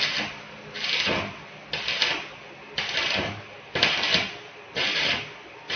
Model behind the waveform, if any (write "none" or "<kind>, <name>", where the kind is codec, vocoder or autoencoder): none